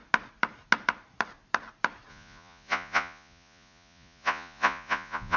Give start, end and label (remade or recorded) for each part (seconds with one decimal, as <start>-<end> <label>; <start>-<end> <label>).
0.0-2.1 recorded; 2.1-5.4 remade